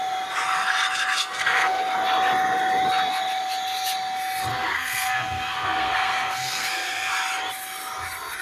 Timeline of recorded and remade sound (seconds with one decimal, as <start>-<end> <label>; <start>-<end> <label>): 0.0-1.2 recorded; 1.2-1.8 remade; 1.8-4.5 recorded; 4.5-7.1 remade; 7.1-8.4 recorded